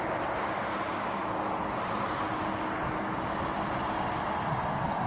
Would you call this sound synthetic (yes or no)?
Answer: no